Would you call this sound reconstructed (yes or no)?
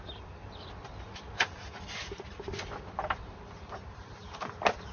no